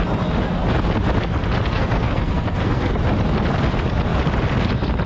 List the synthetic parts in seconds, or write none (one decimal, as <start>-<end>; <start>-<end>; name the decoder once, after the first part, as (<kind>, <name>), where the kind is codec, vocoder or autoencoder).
1.7-2.9 (codec, SNAC)